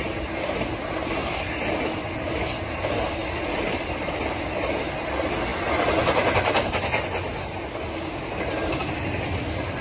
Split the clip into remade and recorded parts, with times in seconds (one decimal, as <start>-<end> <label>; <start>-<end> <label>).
0.0-9.8 recorded